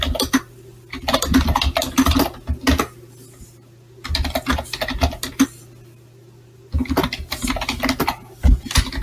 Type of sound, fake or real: real